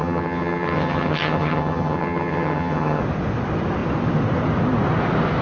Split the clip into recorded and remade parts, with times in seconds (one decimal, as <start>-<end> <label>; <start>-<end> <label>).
0.0-3.0 remade; 3.0-5.4 recorded